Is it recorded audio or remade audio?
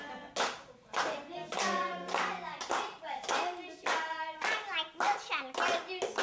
recorded